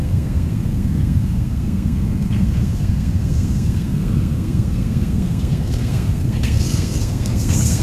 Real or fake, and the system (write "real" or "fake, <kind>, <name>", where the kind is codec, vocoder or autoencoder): fake, codec, SNAC